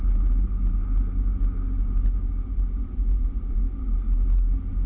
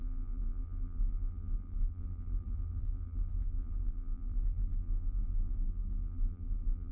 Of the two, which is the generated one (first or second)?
second